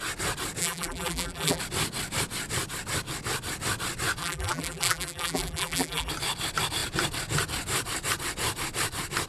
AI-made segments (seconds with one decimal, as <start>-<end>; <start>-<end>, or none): 0.6-1.6; 4.2-6.1